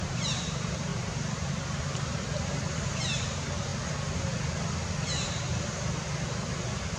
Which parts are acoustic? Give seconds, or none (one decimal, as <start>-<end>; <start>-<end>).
3.7-7.0